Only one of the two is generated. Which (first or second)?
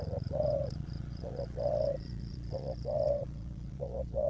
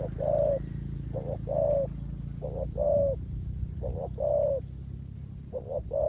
first